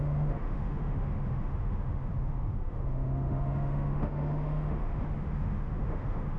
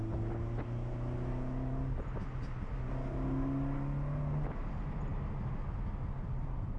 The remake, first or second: first